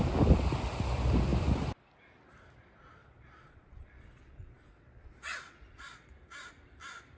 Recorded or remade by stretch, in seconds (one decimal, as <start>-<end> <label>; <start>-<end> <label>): 0.0-3.0 recorded; 3.0-6.1 remade; 6.1-7.2 recorded